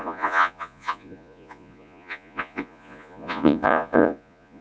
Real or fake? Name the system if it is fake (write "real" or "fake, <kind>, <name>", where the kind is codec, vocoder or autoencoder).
fake, vocoder, Vocos